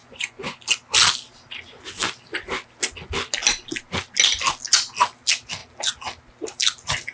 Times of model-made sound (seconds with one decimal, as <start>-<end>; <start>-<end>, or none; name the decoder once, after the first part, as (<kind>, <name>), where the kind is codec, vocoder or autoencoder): 0.0-0.6 (vocoder, Vocos)